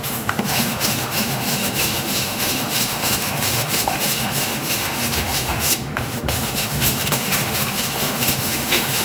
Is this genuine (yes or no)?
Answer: no